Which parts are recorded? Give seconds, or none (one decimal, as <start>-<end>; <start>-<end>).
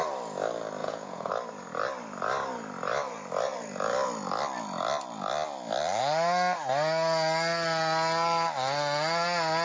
0.0-0.8; 1.3-9.6